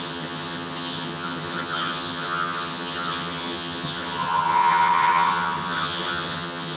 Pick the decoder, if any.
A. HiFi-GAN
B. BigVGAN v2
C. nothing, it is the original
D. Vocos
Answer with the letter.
A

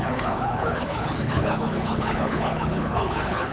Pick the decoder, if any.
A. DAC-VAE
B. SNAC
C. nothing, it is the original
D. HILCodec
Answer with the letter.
D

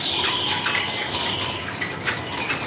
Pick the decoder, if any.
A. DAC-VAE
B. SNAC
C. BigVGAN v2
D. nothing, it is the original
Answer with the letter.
D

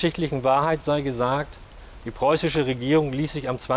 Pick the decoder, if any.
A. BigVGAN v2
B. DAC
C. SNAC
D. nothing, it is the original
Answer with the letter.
D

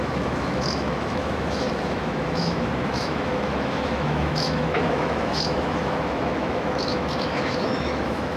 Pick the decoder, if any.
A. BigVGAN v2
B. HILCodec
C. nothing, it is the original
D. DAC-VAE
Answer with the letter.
D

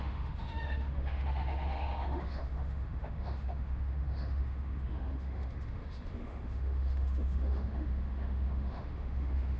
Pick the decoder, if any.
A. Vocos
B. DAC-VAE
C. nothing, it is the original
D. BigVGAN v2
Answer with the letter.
B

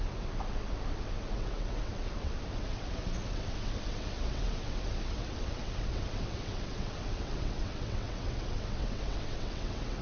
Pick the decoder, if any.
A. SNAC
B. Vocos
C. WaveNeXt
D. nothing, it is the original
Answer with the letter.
C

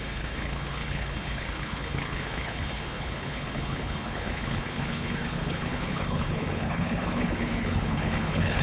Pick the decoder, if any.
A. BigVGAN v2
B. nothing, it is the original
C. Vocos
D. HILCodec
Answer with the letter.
D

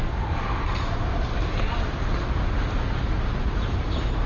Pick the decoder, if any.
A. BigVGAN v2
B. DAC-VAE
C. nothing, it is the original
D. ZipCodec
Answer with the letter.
C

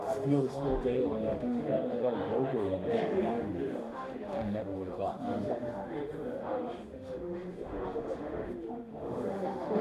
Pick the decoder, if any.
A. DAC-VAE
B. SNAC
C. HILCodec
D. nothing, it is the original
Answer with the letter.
A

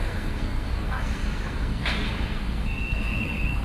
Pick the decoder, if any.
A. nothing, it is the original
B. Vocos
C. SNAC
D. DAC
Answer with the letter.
C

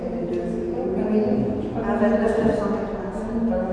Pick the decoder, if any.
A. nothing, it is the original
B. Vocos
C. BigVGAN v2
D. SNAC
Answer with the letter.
A